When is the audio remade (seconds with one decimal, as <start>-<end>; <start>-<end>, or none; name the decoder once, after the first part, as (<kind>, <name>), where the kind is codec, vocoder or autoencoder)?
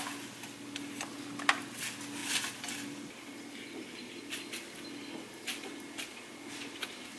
none